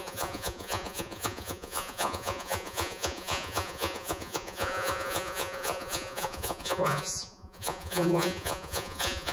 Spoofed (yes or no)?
yes